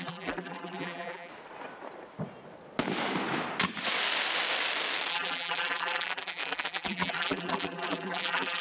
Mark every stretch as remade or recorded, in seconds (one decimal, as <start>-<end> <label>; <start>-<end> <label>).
0.0-1.3 remade; 1.3-5.1 recorded; 5.1-8.6 remade